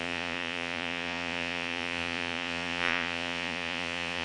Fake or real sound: fake